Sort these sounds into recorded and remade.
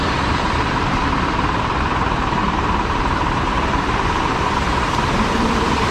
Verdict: remade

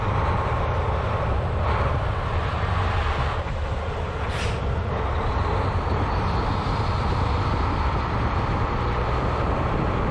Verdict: remade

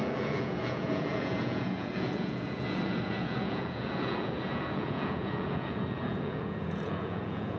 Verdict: remade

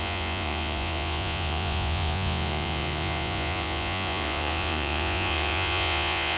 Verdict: remade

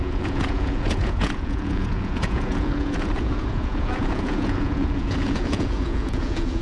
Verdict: remade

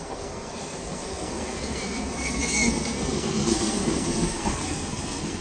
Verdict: remade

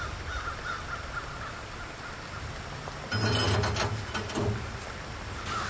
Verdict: recorded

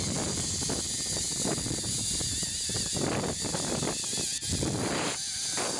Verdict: recorded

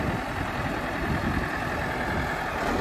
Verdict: recorded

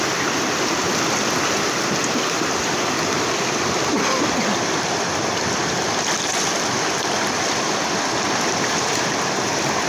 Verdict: recorded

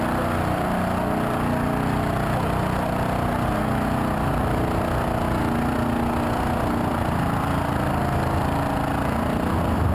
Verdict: recorded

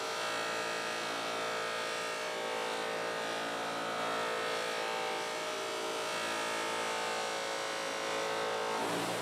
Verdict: recorded